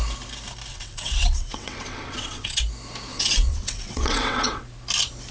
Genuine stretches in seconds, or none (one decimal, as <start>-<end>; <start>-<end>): 0.0-0.7; 2.6-3.1; 4.6-5.3